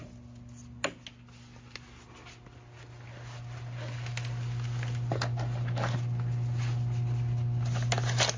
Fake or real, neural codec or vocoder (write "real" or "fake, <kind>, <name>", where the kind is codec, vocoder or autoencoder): real